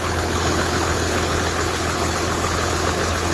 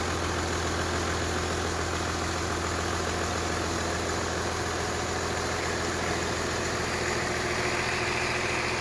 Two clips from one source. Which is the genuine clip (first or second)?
second